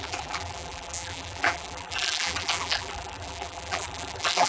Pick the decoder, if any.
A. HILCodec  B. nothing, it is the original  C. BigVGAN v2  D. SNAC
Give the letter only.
C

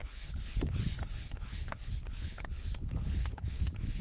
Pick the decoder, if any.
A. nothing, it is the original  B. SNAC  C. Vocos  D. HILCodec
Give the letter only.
D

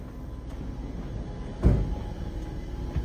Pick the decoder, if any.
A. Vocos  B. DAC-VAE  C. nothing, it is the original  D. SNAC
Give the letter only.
C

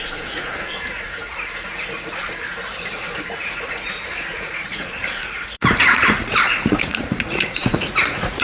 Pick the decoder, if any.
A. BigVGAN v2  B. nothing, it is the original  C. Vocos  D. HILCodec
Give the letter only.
C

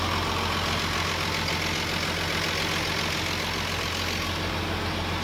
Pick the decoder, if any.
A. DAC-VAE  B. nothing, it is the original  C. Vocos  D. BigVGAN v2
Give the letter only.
B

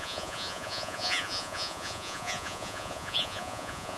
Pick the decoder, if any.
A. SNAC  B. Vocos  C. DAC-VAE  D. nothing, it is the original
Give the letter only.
B